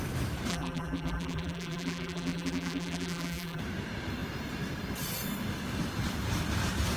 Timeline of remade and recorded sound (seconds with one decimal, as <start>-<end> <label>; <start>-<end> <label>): 0.0-0.5 recorded; 0.5-3.6 remade; 3.6-7.0 recorded

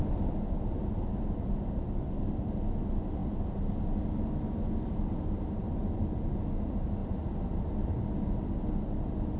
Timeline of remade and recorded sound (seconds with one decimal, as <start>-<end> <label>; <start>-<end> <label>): 0.0-9.4 recorded

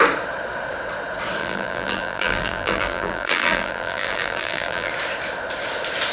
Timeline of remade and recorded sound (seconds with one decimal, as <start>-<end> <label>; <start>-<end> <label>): 0.0-1.4 recorded; 1.4-4.9 remade; 4.9-6.1 recorded